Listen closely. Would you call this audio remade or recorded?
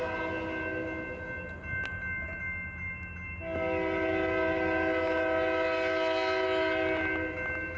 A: recorded